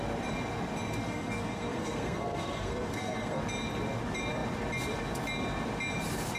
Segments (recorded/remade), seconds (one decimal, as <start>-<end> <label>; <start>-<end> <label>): 0.0-1.0 recorded; 1.0-3.4 remade; 3.4-6.4 recorded